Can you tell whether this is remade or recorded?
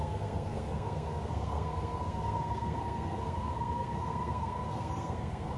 remade